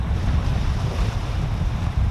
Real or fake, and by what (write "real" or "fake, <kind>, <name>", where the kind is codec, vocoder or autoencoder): fake, vocoder, BigVGAN v2